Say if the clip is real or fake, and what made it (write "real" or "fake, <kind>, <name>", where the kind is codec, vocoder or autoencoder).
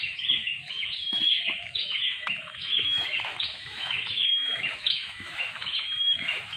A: fake, autoencoder, DAC-VAE